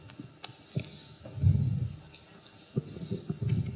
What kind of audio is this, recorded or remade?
recorded